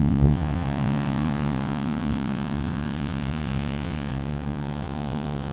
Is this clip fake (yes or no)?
yes